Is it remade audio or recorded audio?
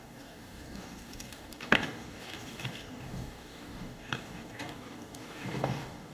remade